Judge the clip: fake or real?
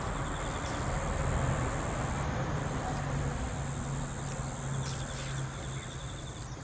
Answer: real